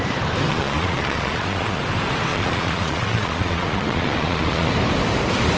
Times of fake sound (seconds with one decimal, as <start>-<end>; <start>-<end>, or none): 0.5-1.8; 2.3-4.7